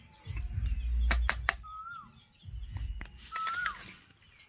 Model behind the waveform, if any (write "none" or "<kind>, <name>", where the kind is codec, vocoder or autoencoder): none